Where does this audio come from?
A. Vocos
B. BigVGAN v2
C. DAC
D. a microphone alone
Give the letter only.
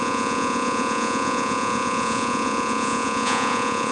A